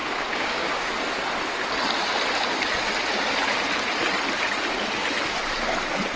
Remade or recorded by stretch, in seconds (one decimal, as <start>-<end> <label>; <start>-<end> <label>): 0.0-0.9 remade; 0.9-6.2 recorded